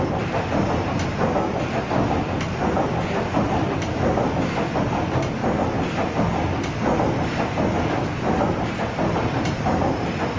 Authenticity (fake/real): real